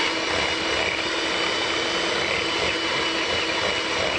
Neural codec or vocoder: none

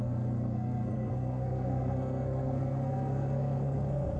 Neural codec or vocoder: codec, SNAC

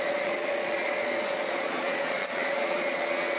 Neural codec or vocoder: vocoder, Vocos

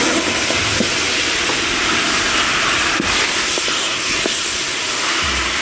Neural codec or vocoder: none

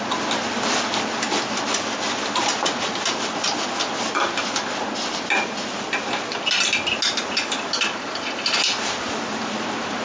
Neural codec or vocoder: none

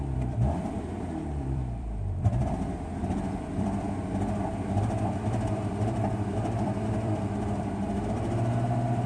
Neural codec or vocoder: vocoder, BigVGAN v2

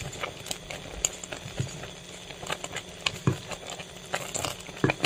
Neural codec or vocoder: none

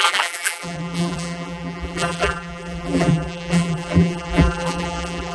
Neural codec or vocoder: vocoder, BigVGAN v2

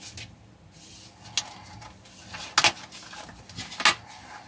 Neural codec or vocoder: none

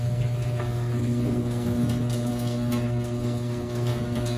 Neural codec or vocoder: codec, SNAC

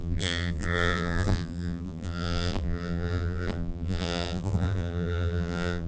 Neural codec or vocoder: vocoder, BigVGAN v2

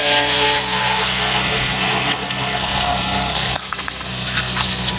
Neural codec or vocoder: codec, SNAC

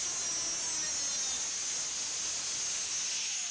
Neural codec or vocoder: none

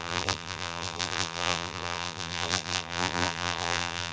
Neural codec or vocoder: vocoder, BigVGAN v2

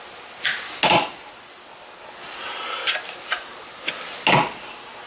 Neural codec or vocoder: none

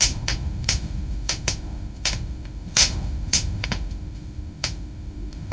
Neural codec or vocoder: autoencoder, DAC-VAE